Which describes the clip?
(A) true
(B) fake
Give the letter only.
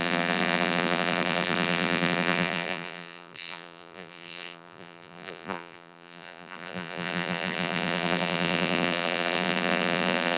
B